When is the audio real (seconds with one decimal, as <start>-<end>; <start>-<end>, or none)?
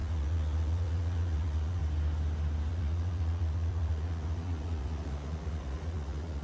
1.8-2.7